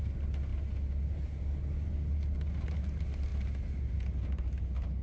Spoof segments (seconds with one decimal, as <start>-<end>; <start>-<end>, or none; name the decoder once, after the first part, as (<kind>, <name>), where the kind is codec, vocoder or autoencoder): none